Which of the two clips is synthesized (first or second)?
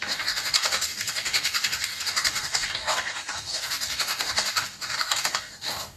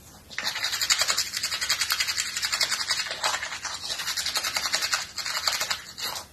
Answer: first